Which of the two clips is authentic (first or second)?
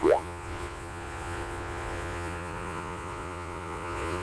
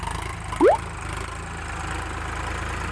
second